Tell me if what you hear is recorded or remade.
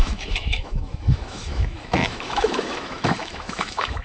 remade